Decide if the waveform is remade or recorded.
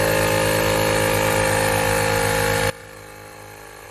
recorded